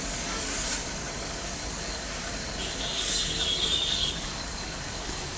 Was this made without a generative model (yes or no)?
no